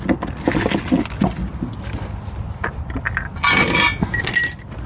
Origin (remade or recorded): recorded